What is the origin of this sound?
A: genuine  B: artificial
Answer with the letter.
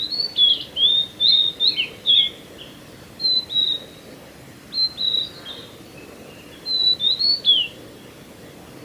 A